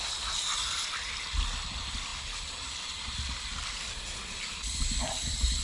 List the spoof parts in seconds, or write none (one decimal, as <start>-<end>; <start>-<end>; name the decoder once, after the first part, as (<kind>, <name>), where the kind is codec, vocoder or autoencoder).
none

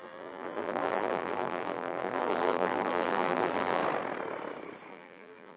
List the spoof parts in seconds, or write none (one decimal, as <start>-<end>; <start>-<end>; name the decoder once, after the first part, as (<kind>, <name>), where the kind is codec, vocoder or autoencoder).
0.0-3.8 (vocoder, BigVGAN v2); 4.9-5.6

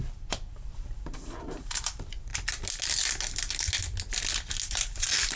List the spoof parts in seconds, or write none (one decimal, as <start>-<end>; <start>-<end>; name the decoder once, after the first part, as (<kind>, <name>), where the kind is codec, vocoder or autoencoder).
0.0-2.3 (vocoder, BigVGAN v2); 4.7-5.4

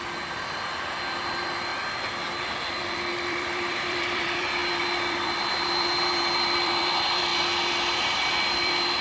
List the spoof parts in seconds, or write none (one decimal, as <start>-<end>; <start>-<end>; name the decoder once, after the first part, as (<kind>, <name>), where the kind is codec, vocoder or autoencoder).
0.0-1.7 (vocoder, BigVGAN v2); 2.8-7.3; 8.3-9.0

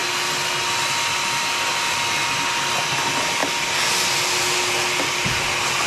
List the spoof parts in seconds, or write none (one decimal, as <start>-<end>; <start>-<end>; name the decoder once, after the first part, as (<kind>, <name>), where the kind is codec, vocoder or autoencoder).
none

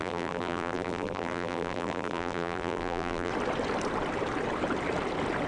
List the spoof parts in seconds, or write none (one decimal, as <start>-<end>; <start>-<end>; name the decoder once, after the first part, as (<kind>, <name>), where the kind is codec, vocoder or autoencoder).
0.0-3.3 (vocoder, BigVGAN v2)

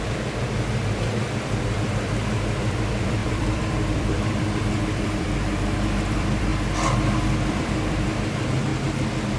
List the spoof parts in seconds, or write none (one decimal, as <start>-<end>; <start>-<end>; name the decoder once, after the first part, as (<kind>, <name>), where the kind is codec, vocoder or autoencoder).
0.0-6.5 (vocoder, BigVGAN v2); 7.5-8.7